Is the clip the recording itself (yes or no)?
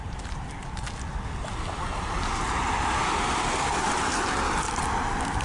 yes